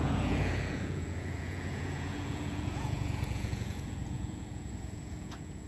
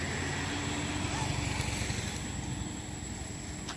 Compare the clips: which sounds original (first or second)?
second